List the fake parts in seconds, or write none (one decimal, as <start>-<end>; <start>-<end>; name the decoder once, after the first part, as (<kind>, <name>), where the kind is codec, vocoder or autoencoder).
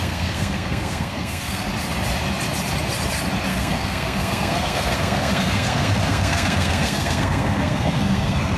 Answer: 0.0-1.7 (codec, SNAC); 3.5-8.6